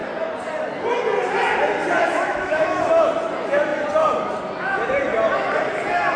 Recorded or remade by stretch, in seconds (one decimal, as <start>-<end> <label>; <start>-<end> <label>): 0.0-2.0 recorded; 2.0-2.8 remade; 2.8-6.2 recorded